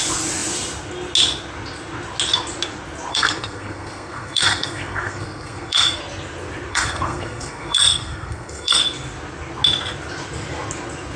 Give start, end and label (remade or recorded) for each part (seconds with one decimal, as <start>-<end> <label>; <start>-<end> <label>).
0.0-3.1 recorded; 3.1-6.0 remade; 6.0-6.7 recorded; 6.7-8.8 remade; 8.8-11.2 recorded